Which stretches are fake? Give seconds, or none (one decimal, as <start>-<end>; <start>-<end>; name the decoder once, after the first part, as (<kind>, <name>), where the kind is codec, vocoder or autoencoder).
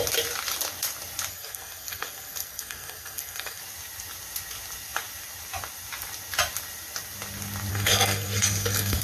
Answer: 1.3-3.6 (codec, SNAC); 7.7-9.0